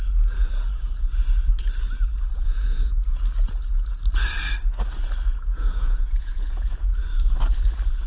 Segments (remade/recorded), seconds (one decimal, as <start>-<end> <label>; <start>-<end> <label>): 0.0-2.1 recorded; 2.1-3.2 remade; 3.2-5.3 recorded; 5.3-6.8 remade; 6.8-8.1 recorded